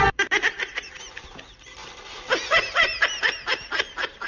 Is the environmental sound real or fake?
fake